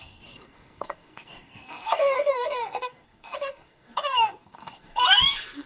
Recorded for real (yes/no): no